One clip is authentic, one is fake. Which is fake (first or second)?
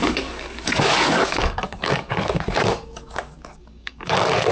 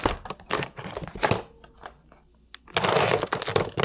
first